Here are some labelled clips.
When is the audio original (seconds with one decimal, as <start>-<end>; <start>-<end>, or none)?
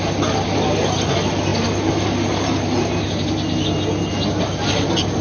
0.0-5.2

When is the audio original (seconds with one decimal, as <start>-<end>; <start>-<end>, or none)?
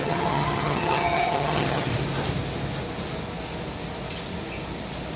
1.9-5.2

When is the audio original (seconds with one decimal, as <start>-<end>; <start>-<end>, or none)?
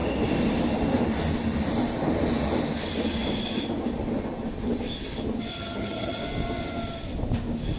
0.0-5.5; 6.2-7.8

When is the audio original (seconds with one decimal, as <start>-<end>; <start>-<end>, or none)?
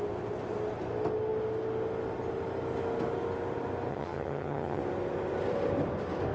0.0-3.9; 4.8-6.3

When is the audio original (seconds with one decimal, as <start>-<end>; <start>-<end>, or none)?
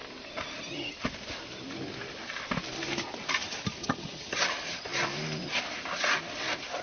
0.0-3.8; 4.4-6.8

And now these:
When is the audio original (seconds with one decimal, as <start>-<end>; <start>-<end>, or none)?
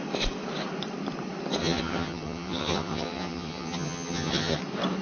0.0-1.6; 4.6-5.0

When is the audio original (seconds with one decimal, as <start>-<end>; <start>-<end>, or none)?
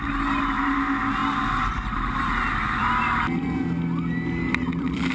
0.0-5.1